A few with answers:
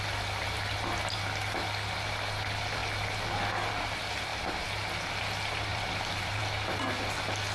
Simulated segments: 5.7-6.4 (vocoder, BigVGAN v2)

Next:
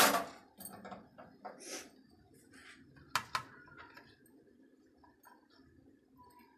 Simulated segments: none

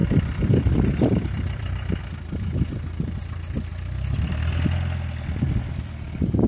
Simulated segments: 0.0-2.0 (vocoder, BigVGAN v2)

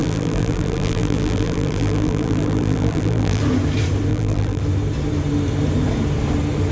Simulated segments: 0.0-3.4 (vocoder, BigVGAN v2); 4.1-4.6